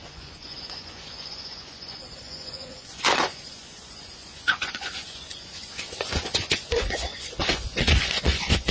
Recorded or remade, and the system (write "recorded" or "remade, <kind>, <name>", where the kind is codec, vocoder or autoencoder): remade, vocoder, Vocos